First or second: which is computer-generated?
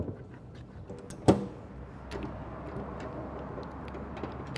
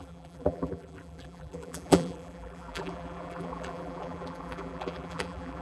second